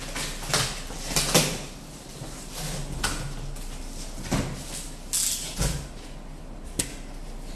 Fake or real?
real